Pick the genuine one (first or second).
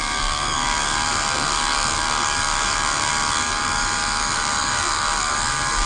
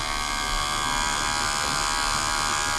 second